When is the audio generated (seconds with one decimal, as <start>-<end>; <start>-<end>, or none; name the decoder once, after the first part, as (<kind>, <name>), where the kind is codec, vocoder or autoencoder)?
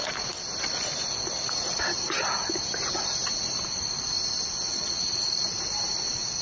none